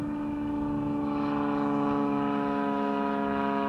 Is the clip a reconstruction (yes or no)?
yes